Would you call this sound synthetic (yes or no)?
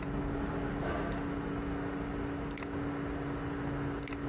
no